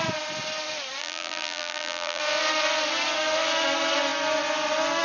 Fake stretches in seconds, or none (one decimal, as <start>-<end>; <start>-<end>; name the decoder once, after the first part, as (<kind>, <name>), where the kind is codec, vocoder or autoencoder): 1.0-2.2 (vocoder, BigVGAN v2)